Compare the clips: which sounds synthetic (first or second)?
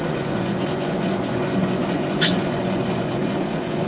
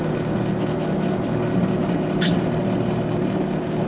first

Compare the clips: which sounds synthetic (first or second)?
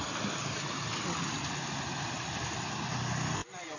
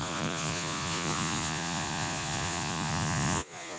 second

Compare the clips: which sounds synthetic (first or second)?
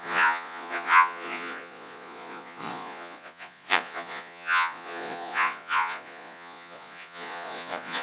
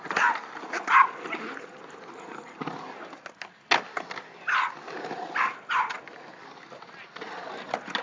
first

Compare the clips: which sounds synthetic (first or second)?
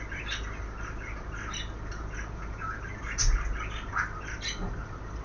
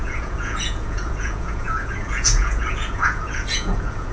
second